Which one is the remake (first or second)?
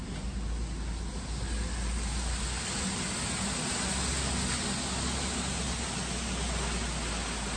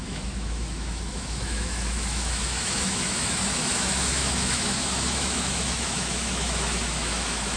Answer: second